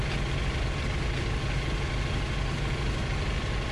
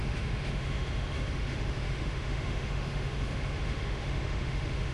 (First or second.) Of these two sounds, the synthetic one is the second